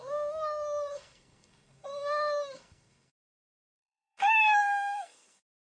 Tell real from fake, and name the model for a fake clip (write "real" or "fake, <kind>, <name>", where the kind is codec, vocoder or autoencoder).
fake, codec, SNAC